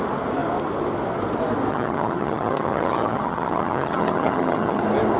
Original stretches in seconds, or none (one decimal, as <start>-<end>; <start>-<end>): 0.0-1.7; 4.8-5.2